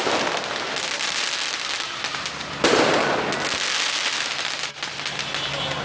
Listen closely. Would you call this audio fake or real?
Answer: real